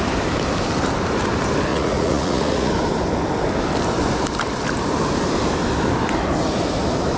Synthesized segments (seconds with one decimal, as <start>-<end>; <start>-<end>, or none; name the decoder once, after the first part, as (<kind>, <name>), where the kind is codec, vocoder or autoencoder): 1.7-2.7 (vocoder, Vocos)

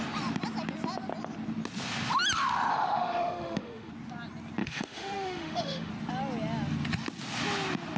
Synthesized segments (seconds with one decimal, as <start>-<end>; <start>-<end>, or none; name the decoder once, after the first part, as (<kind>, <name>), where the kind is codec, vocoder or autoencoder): 2.7-3.9 (autoencoder, DAC-VAE); 4.6-5.9

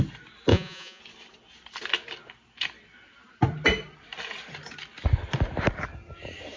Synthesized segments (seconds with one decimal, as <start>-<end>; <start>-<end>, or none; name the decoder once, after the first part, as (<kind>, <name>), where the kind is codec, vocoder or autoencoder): 0.5-1.0 (vocoder, Vocos)

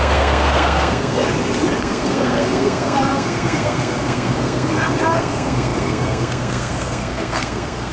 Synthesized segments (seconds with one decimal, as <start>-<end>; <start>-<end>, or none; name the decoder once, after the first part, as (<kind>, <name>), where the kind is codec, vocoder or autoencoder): 0.0-1.2 (codec, SNAC); 1.8-7.9

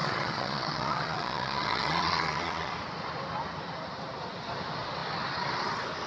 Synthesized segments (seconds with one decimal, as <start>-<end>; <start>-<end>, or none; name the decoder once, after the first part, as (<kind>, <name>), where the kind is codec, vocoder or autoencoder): 0.0-2.7 (vocoder, Vocos)

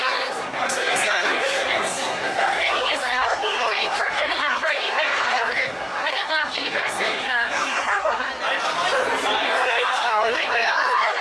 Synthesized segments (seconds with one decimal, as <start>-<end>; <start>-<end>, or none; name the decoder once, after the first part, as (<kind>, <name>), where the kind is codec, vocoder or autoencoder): 0.0-8.3 (codec, SNAC); 9.4-11.2

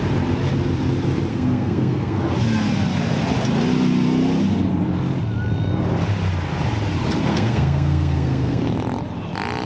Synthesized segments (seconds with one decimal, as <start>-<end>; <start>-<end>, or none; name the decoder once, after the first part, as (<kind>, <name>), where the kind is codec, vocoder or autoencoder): 1.3-2.2 (codec, SNAC); 7.3-8.6